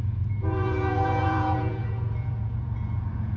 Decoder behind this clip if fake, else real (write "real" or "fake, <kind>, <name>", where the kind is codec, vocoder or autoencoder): fake, vocoder, Vocos